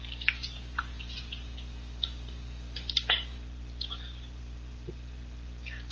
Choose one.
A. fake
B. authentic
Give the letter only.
A